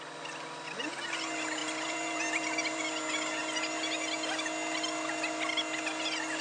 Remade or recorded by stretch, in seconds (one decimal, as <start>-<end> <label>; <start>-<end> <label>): 0.0-1.6 recorded; 1.6-2.8 remade; 2.8-6.4 recorded